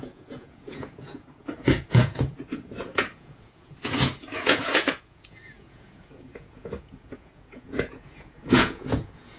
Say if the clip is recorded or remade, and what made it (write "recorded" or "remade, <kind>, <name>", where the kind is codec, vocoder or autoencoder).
remade, vocoder, Vocos